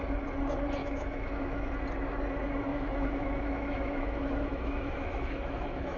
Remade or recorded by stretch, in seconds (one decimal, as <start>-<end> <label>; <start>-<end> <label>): 0.0-0.8 recorded; 0.8-1.7 remade; 1.7-2.7 recorded; 2.7-6.0 remade